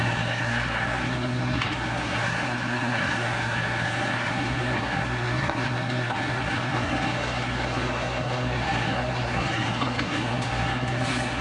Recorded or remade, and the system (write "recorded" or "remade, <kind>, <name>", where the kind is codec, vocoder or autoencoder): remade, codec, SNAC